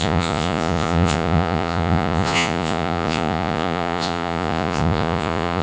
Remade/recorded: remade